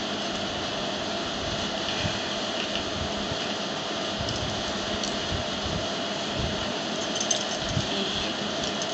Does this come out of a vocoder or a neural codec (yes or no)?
no